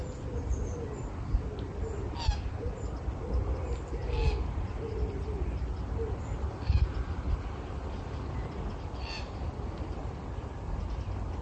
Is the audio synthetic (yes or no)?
no